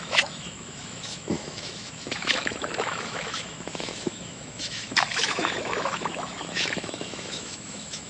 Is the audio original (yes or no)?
no